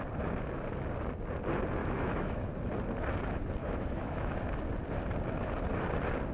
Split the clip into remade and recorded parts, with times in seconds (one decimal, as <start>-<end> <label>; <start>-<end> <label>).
0.0-1.8 recorded; 1.8-2.5 remade; 2.5-3.6 recorded; 3.6-4.3 remade; 4.3-6.3 recorded